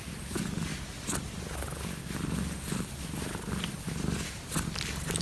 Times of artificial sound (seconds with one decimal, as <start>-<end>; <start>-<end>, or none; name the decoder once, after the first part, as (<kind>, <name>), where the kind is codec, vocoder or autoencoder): none